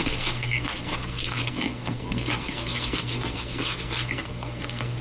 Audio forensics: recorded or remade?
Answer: remade